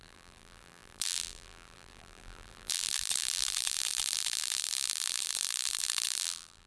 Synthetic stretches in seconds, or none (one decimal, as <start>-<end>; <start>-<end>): 0.0-6.7